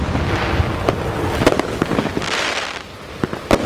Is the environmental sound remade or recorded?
recorded